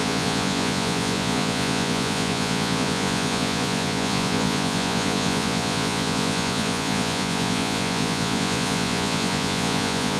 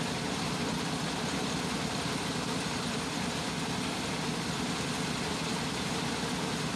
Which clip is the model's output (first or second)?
first